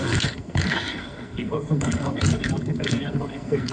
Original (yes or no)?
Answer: no